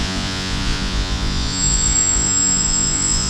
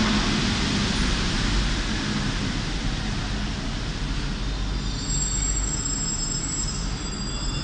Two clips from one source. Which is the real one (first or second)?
second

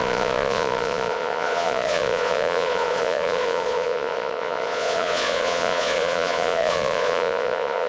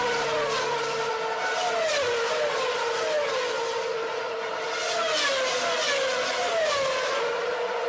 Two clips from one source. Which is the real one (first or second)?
second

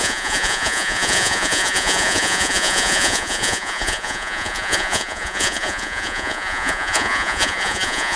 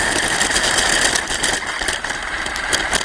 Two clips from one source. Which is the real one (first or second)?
second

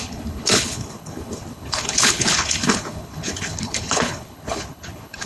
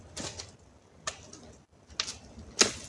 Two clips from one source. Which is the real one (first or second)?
second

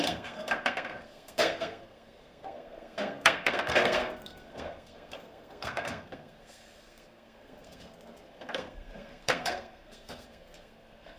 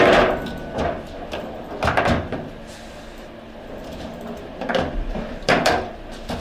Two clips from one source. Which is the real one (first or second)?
second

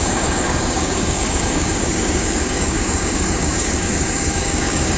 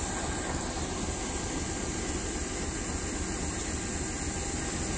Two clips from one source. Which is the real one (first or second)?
second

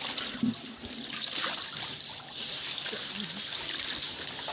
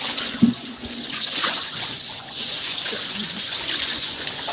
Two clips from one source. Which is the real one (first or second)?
first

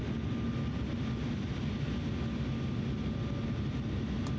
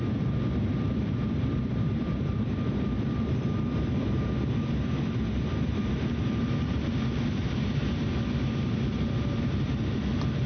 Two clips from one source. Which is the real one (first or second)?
first